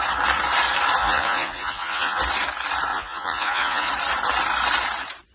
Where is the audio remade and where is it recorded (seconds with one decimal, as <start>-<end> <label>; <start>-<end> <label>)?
0.0-1.0 recorded; 1.0-2.2 remade; 2.2-2.9 recorded; 2.9-3.9 remade; 3.9-5.3 recorded